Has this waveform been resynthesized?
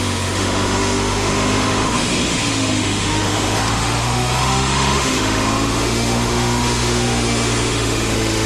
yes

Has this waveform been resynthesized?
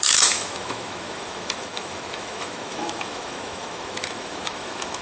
yes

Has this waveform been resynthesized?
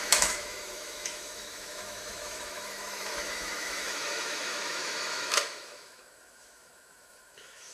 yes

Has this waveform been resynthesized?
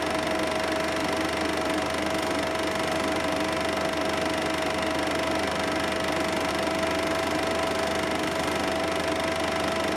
no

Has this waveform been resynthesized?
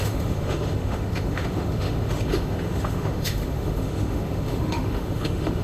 yes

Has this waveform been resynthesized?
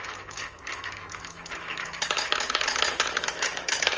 yes